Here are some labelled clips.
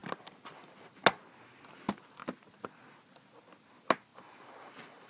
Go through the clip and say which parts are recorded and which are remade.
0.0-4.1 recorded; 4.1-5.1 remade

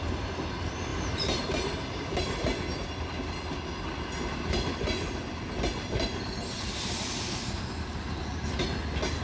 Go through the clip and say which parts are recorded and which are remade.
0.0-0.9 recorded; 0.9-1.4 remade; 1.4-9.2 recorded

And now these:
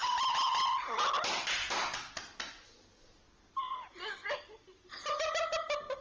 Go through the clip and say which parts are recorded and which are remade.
0.0-4.2 recorded; 4.2-5.3 remade; 5.3-6.0 recorded